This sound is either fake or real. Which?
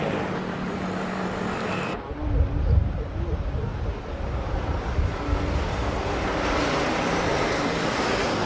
real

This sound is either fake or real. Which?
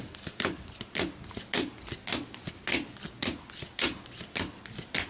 real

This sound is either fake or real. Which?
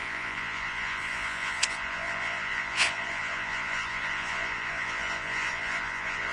fake